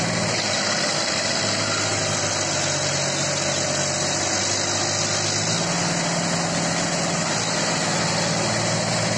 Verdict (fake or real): real